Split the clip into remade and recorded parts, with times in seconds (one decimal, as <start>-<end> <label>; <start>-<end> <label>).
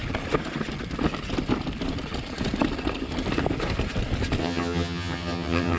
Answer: 0.0-4.4 recorded; 4.4-5.8 remade